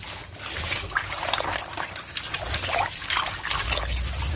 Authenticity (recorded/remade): recorded